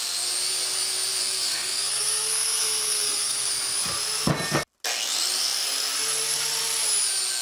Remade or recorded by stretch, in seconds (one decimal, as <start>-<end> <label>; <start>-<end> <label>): 0.0-1.2 recorded; 1.2-3.5 remade; 3.5-7.4 recorded